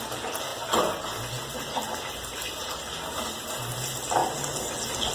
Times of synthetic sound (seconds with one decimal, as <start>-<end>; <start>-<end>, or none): none